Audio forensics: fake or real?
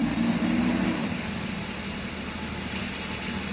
real